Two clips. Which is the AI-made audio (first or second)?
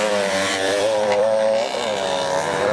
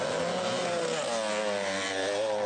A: first